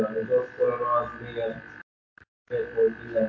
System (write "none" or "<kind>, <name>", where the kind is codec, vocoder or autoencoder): none